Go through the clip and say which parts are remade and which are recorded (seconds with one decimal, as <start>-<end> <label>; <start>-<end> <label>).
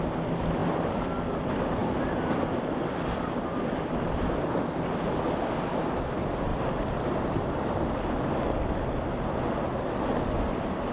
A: 0.0-0.6 recorded; 0.6-1.4 remade; 1.4-1.8 recorded; 1.8-4.4 remade; 4.4-6.5 recorded; 6.5-7.5 remade; 7.5-10.9 recorded